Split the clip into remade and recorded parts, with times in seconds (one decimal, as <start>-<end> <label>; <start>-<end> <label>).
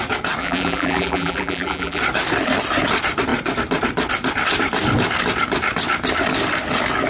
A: 0.0-0.4 recorded; 0.4-2.0 remade; 2.0-7.1 recorded